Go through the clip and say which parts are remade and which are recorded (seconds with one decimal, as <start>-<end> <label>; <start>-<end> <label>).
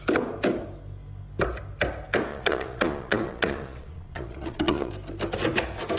0.0-2.3 recorded; 2.3-4.9 remade; 4.9-6.0 recorded